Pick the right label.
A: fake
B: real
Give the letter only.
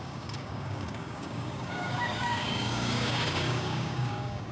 A